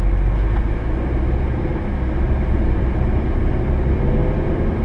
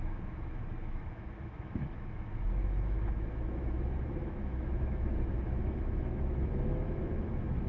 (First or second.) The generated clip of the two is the second